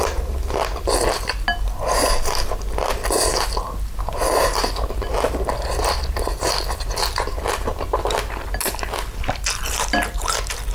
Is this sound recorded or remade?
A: recorded